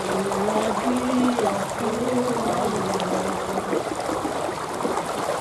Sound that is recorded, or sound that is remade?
recorded